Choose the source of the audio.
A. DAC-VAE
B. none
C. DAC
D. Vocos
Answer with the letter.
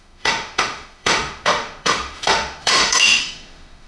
A